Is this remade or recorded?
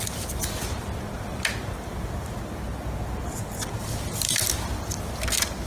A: recorded